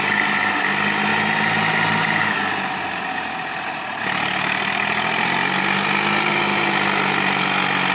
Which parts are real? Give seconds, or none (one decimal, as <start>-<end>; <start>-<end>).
0.0-6.5; 7.4-7.9